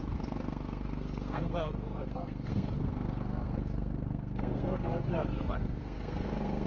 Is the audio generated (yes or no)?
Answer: yes